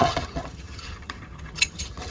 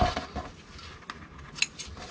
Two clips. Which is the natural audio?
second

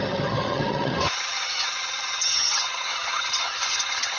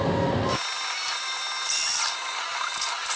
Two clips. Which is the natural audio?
second